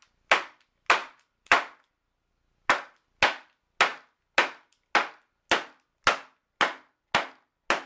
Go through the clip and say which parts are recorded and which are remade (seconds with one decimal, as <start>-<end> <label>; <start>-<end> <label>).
0.0-1.0 recorded; 1.0-2.3 remade; 2.3-7.9 recorded